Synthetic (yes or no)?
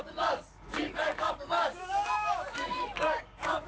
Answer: yes